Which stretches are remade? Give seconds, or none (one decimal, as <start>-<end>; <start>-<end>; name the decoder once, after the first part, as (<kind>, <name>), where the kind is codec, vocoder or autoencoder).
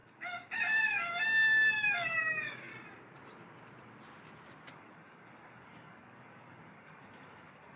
0.0-2.7 (codec, DAC); 4.7-7.8